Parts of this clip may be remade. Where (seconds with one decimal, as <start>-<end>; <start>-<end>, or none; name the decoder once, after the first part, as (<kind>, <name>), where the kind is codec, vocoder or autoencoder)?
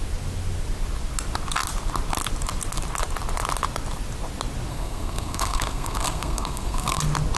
4.7-7.0 (codec, SNAC)